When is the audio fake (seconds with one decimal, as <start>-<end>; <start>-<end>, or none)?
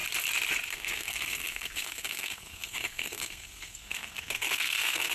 0.7-5.1